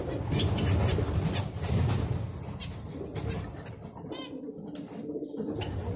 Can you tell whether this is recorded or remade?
recorded